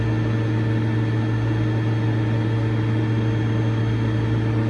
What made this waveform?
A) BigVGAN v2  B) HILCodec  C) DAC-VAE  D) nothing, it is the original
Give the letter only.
D